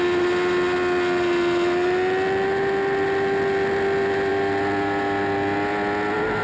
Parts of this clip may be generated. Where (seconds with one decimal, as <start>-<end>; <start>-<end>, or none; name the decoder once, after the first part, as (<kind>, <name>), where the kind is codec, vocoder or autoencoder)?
none

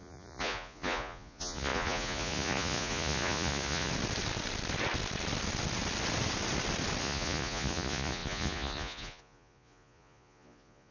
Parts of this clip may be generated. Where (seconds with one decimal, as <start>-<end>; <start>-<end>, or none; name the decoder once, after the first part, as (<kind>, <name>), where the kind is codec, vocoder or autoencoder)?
0.0-3.9 (vocoder, Vocos); 7.0-10.9